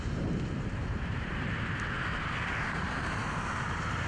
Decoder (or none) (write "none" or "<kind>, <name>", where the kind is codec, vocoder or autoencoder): vocoder, BigVGAN v2